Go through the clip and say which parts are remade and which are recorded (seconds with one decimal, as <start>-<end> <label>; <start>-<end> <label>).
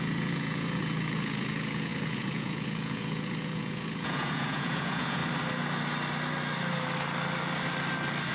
0.0-5.2 remade; 5.2-8.3 recorded